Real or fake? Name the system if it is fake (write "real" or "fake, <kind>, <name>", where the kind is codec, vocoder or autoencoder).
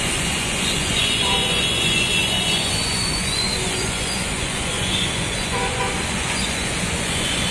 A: fake, vocoder, Vocos